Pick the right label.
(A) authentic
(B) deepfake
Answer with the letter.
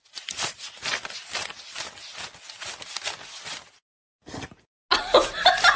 A